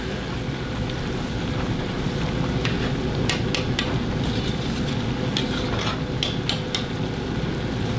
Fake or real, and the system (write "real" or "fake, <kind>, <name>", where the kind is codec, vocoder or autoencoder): real